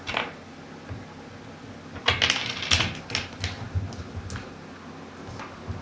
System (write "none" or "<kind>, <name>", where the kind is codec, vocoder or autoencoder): none